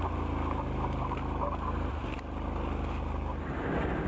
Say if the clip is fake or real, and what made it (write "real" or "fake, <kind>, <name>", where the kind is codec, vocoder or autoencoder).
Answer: real